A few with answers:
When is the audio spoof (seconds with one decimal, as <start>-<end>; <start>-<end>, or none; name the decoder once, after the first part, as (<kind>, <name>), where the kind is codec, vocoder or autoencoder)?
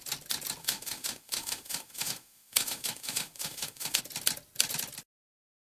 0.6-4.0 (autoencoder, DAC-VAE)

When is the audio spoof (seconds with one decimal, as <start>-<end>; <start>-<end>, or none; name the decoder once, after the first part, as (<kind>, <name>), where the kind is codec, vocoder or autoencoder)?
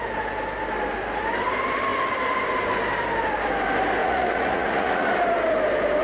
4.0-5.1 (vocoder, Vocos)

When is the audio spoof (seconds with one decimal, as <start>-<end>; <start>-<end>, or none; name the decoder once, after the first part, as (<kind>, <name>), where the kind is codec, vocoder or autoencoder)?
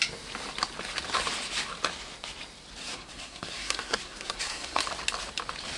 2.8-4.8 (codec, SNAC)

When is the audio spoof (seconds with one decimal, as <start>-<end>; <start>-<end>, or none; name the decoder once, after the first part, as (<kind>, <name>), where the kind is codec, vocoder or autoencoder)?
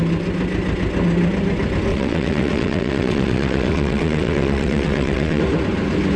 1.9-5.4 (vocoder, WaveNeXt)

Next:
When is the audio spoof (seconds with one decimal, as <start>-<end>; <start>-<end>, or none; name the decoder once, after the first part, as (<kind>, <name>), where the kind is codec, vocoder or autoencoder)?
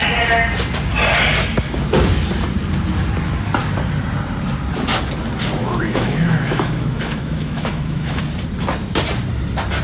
5.6-8.2 (autoencoder, DAC-VAE)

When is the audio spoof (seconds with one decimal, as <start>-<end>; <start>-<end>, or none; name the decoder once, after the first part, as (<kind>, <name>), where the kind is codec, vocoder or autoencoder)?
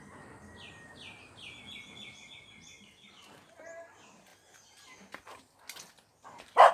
none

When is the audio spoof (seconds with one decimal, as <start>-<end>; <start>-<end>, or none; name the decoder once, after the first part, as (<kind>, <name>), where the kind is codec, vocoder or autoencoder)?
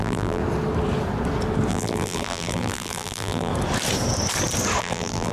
0.0-0.4 (vocoder, BigVGAN v2); 1.7-3.5; 4.8-5.3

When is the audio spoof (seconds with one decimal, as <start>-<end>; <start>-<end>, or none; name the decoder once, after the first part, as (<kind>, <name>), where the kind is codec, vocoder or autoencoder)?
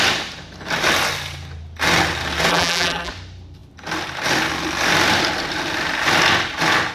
2.5-3.1 (vocoder, BigVGAN v2)